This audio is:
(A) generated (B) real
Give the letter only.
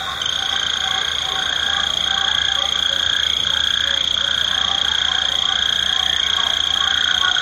B